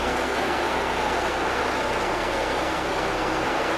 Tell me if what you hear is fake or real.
fake